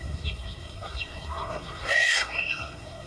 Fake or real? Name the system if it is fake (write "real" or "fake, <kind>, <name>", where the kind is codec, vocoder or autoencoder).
fake, codec, SNAC